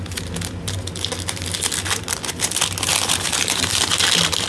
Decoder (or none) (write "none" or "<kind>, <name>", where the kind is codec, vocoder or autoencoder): none